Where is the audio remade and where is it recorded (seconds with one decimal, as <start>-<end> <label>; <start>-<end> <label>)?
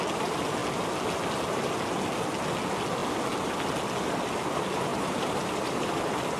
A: 0.0-4.9 recorded; 4.9-6.0 remade; 6.0-6.4 recorded